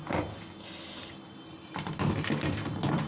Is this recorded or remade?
recorded